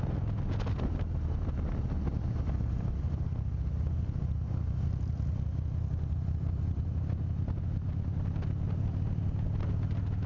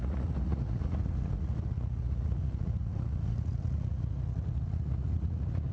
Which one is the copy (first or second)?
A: second